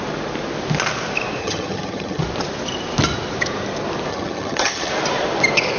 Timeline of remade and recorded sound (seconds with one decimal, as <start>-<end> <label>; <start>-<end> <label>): 0.0-1.4 recorded; 1.4-2.2 remade; 2.2-4.1 recorded; 4.1-4.9 remade; 4.9-5.8 recorded